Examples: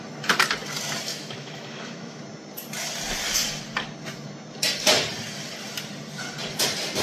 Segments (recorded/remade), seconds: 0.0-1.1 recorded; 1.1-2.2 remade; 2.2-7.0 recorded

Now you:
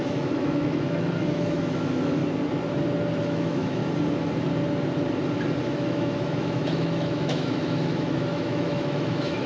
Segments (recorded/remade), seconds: 0.0-2.2 remade; 2.2-3.2 recorded; 3.2-3.8 remade; 3.8-5.6 recorded; 5.6-9.5 remade

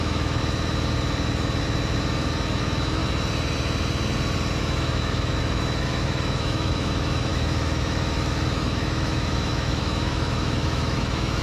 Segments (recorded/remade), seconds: 0.0-0.4 remade; 0.4-2.6 recorded; 2.6-3.0 remade; 3.0-4.6 recorded; 4.6-11.4 remade

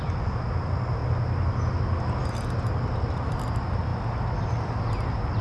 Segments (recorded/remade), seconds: 0.0-5.4 recorded

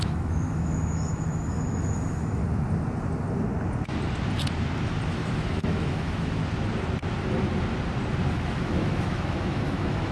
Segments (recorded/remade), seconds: 0.0-2.4 remade; 2.4-5.1 recorded; 5.1-6.4 remade; 6.4-8.3 recorded; 8.3-10.1 remade

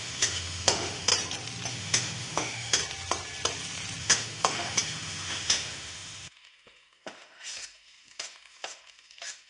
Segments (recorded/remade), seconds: 0.0-1.1 remade; 1.1-1.7 recorded; 1.7-2.8 remade; 2.8-4.0 recorded; 4.0-9.5 remade

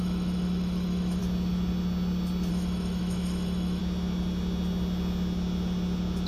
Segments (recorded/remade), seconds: 0.0-1.2 remade; 1.2-2.5 recorded; 2.5-3.8 remade; 3.8-6.3 recorded

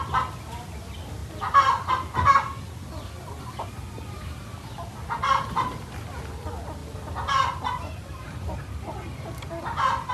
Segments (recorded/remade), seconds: 0.0-10.1 recorded